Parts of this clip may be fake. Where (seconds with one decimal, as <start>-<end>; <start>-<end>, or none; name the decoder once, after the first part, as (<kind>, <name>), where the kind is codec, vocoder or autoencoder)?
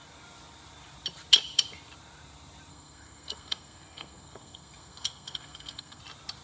2.7-6.0 (codec, SNAC)